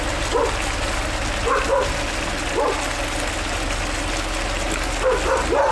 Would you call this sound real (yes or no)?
yes